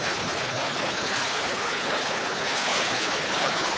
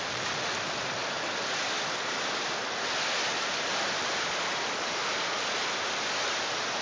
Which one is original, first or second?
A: second